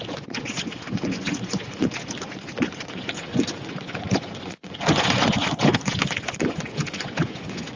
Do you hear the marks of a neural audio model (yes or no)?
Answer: yes